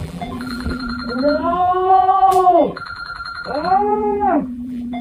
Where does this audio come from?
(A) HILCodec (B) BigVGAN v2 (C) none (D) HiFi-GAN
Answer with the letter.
B